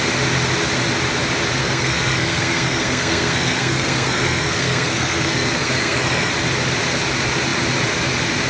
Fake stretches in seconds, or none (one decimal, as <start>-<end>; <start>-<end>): 1.6-6.3